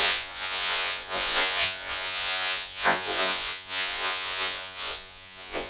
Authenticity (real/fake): fake